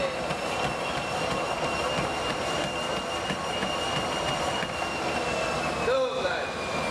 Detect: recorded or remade recorded